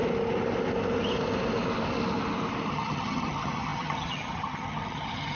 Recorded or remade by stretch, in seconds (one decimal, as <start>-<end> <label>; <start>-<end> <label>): 0.0-2.7 recorded; 2.7-5.3 remade